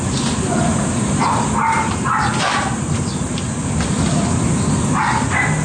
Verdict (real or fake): real